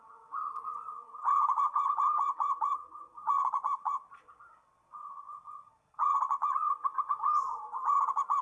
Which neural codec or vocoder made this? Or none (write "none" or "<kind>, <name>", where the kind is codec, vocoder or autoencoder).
vocoder, WaveNeXt